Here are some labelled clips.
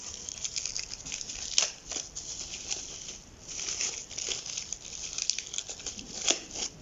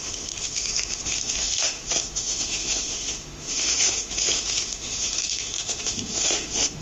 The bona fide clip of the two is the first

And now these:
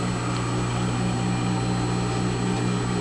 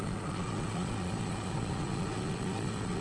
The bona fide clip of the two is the first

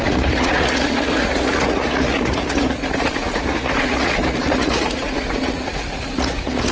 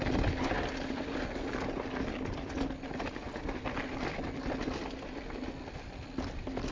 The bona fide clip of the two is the second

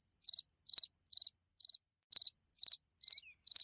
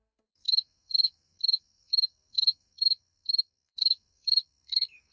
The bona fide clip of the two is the first